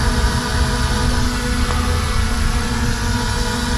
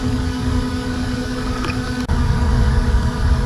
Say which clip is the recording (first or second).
first